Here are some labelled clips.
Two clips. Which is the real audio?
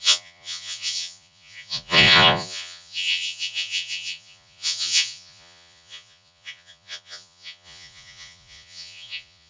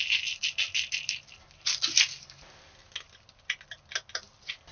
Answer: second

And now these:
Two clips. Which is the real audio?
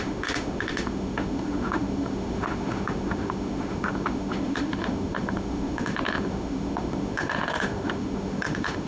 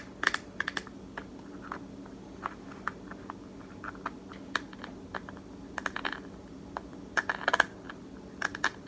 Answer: second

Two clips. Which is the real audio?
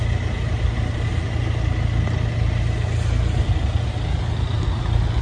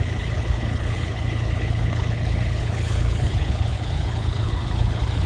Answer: first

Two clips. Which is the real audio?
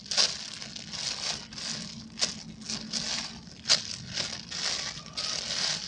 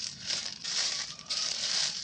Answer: first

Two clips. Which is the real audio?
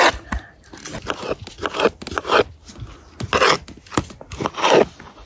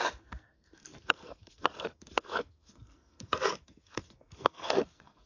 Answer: first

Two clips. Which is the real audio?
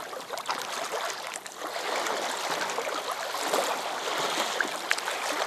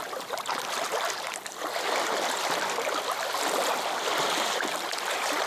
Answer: first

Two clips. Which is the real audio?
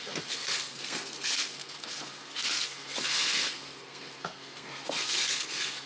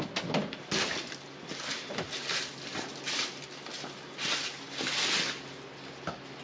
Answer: second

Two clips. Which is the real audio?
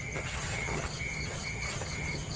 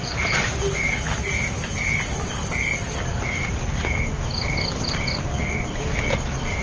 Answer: second